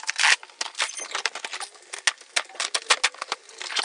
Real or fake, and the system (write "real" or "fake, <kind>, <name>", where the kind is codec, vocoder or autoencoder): real